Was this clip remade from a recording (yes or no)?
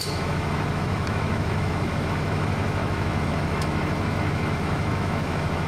yes